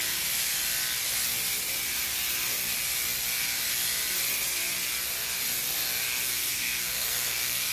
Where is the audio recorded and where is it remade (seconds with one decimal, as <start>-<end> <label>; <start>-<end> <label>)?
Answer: 0.0-6.2 recorded; 6.2-7.7 remade